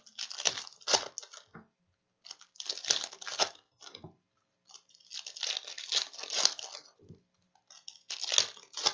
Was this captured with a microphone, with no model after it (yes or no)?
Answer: yes